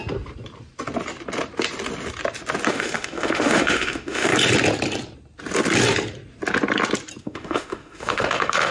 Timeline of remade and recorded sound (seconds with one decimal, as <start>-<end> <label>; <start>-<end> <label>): 0.0-2.7 recorded; 2.7-4.3 remade; 4.3-7.2 recorded; 7.2-8.7 remade